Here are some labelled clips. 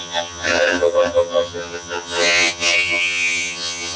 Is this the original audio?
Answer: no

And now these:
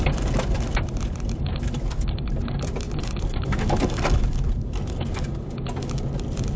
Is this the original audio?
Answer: yes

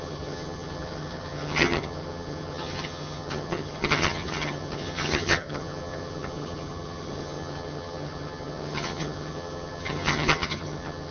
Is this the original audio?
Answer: no